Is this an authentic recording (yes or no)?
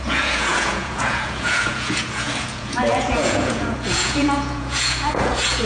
no